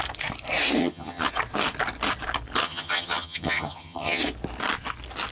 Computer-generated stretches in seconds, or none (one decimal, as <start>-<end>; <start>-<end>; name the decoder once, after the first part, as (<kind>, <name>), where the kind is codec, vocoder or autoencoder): 0.8-1.3 (vocoder, HiFi-GAN); 2.6-4.2